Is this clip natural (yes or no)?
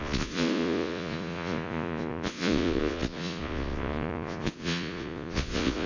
no